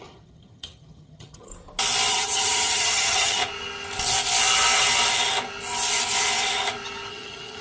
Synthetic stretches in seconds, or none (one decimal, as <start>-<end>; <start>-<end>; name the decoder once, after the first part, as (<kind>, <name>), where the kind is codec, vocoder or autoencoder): 0.0-1.5 (vocoder, HiFi-GAN); 2.1-3.4; 7.1-7.6